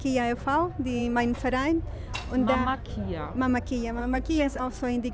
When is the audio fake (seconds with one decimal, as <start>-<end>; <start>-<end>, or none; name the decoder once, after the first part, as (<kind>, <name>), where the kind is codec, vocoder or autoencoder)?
4.0-4.6 (codec, SNAC)